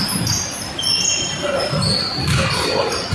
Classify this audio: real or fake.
real